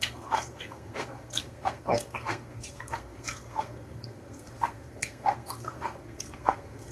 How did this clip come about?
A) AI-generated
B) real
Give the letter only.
A